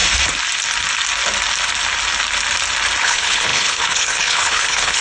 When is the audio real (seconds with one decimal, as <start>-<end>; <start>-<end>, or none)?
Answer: 0.0-3.0